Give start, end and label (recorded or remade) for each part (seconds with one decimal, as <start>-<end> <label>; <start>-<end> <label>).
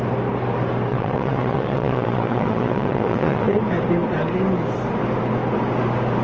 0.0-0.9 recorded; 0.9-3.6 remade; 3.6-6.2 recorded